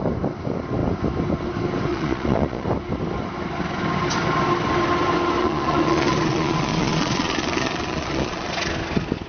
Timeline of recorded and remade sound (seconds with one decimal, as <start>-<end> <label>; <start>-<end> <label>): 0.0-1.9 recorded; 1.9-2.7 remade; 2.7-5.4 recorded; 5.4-8.5 remade; 8.5-9.3 recorded